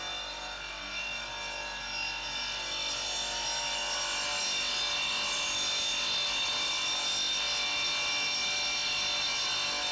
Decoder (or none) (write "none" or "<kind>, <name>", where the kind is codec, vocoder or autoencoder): none